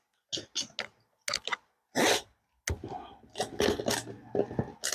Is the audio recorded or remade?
recorded